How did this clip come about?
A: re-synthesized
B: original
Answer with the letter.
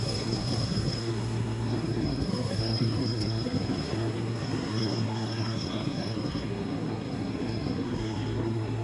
A